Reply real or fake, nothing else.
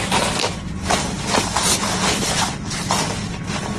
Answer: real